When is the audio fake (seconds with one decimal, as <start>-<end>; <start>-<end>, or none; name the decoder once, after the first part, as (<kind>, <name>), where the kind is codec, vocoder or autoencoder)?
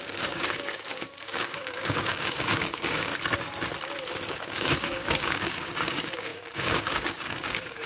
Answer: 0.0-3.1 (codec, DAC); 4.3-7.9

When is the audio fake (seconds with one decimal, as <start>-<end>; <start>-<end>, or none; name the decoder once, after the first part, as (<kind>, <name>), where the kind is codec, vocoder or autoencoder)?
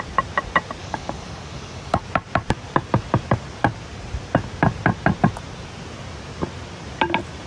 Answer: 0.8-2.0 (codec, DAC)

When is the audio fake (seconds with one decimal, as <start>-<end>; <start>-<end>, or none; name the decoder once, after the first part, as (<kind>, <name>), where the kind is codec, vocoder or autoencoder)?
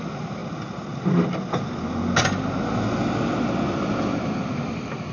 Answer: none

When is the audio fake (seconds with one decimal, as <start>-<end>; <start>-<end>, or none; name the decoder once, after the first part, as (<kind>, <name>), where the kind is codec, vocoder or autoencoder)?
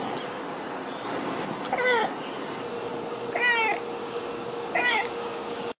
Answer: 4.0-5.8 (codec, DAC)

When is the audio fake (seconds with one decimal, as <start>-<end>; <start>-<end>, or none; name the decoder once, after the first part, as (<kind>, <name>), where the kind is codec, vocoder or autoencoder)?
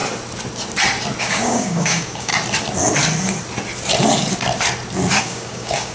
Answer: 1.2-2.3 (codec, DAC); 5.2-5.9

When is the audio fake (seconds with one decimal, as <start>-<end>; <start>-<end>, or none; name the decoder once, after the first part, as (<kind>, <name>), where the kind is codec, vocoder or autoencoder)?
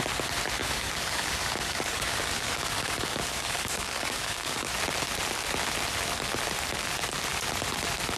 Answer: 0.6-4.7 (codec, DAC)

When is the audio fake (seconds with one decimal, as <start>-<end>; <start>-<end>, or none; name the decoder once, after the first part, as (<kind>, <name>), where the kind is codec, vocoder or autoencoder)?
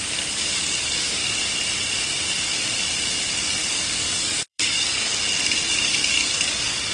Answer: 0.0-1.2 (codec, DAC); 3.7-5.1; 5.7-6.9